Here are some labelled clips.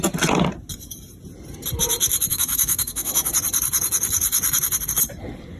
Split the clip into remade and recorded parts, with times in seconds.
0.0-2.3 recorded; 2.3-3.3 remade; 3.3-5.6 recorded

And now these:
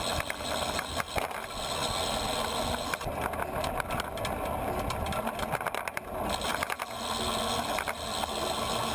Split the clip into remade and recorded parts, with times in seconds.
0.0-8.9 recorded

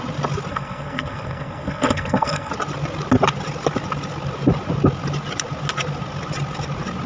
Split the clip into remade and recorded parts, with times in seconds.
0.0-0.5 recorded; 0.5-2.5 remade; 2.5-7.1 recorded

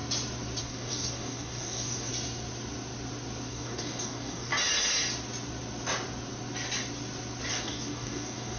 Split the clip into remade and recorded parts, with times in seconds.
0.0-0.6 recorded; 0.6-2.1 remade; 2.1-3.5 recorded; 3.5-4.5 remade; 4.5-7.5 recorded; 7.5-8.6 remade

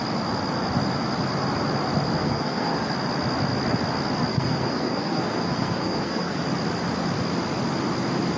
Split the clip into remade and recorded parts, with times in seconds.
0.0-2.2 recorded; 2.2-2.9 remade; 2.9-4.3 recorded; 4.3-6.4 remade; 6.4-8.4 recorded